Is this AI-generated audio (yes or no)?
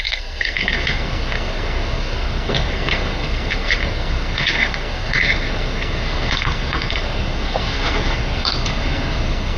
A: yes